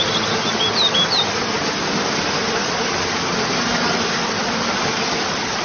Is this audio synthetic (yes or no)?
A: no